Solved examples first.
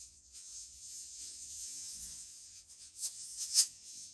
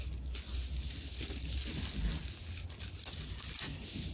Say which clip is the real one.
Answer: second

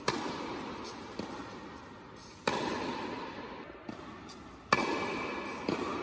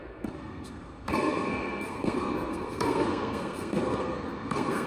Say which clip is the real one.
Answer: first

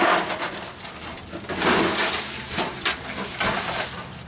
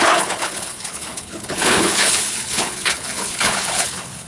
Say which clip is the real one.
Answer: first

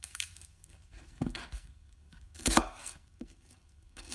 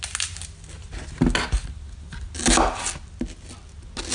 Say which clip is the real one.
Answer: second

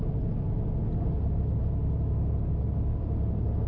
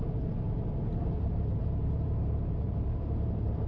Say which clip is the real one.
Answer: first